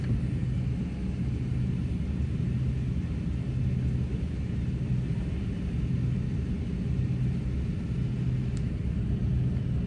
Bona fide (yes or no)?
yes